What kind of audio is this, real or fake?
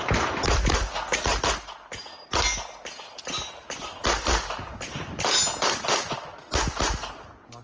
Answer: real